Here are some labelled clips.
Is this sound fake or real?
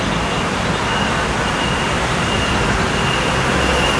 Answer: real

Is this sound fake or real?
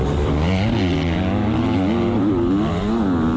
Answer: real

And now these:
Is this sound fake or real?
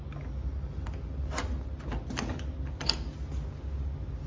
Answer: real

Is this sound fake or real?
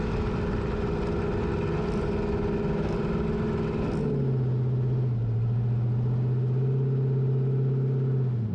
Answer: real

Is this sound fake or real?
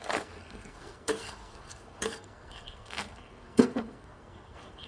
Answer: fake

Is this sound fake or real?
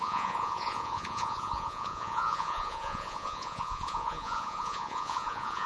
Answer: fake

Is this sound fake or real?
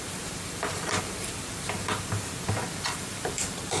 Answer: fake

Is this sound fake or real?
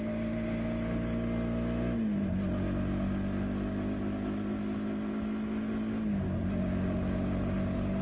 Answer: real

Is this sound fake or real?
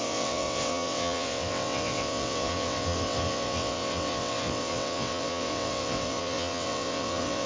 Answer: fake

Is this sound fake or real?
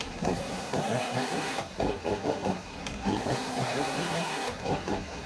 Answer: fake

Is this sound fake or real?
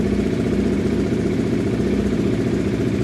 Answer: real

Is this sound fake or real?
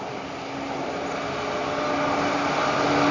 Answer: real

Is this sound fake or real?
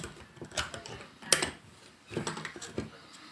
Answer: real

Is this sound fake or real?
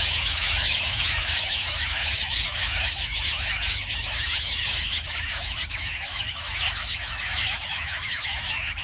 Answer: fake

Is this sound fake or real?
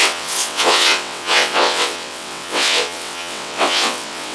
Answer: fake